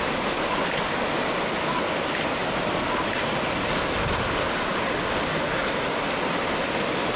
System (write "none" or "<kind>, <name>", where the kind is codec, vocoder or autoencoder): none